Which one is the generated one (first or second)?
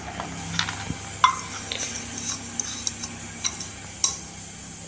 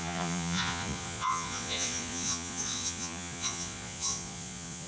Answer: second